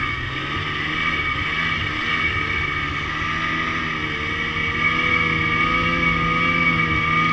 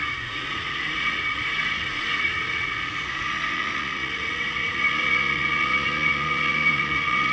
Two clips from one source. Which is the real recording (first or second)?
first